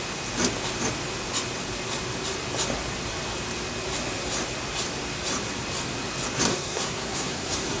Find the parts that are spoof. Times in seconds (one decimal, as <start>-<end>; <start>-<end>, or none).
6.5-7.8